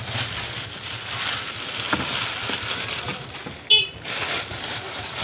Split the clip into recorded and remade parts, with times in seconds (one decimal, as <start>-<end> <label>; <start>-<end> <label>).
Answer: 0.0-5.2 recorded